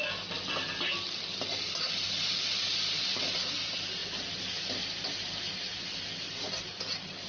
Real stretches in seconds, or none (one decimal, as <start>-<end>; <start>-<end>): 0.0-7.3